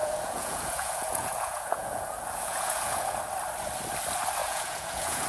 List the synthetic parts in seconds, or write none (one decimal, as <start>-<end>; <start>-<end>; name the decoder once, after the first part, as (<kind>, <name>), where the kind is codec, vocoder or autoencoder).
0.0-3.2 (vocoder, Vocos); 4.4-5.3